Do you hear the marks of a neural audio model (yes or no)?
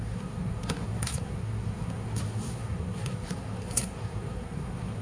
yes